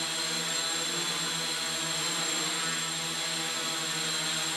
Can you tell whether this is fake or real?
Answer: real